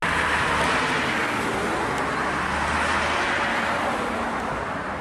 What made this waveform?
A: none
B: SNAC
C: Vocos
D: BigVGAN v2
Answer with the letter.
A